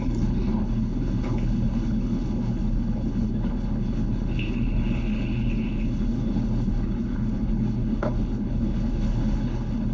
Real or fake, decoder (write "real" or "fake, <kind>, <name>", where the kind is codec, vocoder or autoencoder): fake, codec, HILCodec